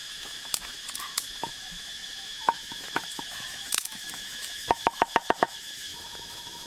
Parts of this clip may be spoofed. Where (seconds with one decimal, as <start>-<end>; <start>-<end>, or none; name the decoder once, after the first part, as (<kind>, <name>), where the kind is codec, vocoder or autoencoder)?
0.0-6.7 (autoencoder, DAC-VAE)